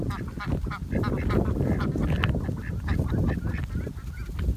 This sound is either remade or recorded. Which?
recorded